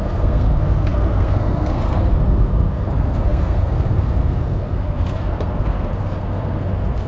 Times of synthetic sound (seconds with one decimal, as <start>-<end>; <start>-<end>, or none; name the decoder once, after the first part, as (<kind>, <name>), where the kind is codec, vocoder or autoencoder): 0.0-7.1 (codec, SNAC)